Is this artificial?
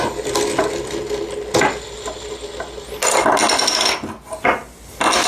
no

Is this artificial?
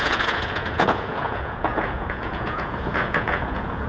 yes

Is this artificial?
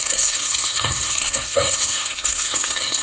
yes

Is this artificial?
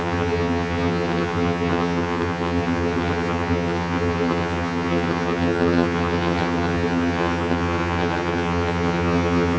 yes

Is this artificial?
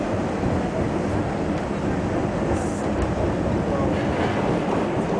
no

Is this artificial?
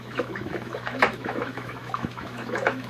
yes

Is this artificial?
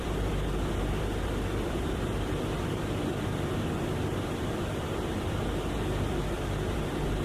yes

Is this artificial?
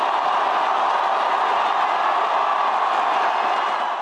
no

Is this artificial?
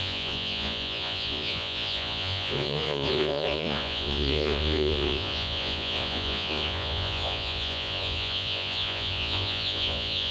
yes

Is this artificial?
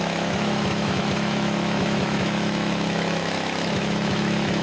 yes